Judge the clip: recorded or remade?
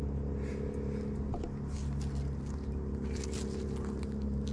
recorded